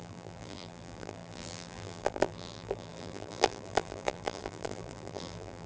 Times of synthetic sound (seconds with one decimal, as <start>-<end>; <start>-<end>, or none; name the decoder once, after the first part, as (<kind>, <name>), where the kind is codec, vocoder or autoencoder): 0.0-5.7 (vocoder, BigVGAN v2)